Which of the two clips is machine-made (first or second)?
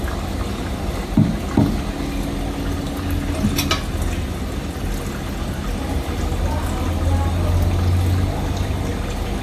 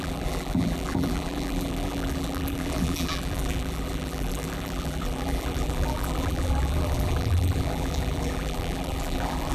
second